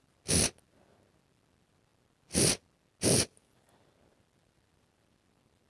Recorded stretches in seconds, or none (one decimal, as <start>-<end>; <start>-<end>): 0.0-5.7